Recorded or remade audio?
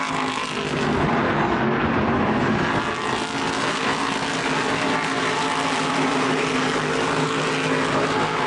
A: recorded